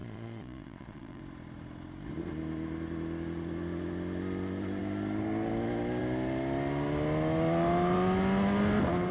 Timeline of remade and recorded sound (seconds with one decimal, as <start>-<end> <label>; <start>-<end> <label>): 0.0-1.2 remade; 1.2-9.1 recorded